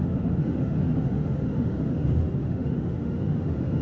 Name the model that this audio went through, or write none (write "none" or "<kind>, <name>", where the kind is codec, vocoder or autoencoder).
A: autoencoder, DAC-VAE